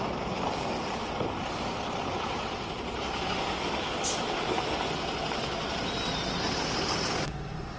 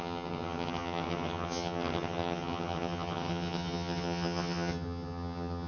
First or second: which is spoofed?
second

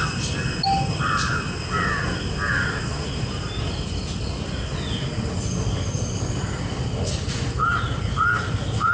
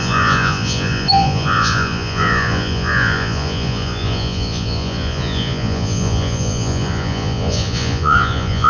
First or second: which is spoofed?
second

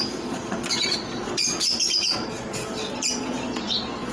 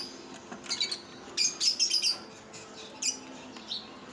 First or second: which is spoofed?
first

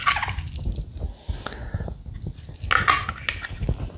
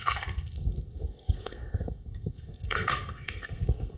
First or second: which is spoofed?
second